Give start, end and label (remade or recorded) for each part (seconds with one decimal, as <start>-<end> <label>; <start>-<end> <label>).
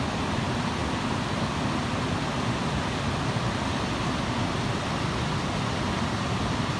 0.0-6.8 recorded